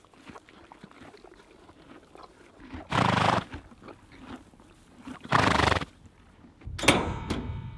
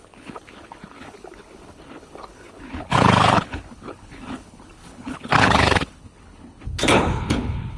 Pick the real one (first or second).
first